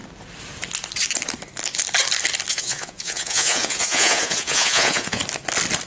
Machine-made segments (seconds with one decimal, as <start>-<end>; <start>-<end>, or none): 2.5-5.2